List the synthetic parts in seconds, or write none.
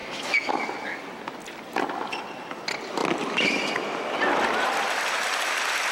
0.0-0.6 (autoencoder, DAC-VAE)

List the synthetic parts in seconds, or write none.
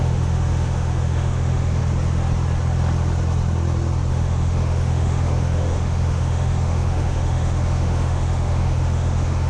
0.0-1.8 (autoencoder, DAC-VAE); 4.1-9.5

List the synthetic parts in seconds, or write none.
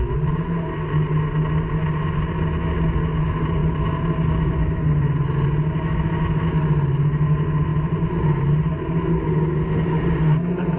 none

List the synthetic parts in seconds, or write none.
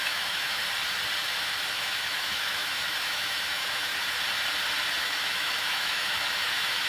0.0-0.6 (autoencoder, DAC-VAE); 1.7-3.9; 5.0-6.9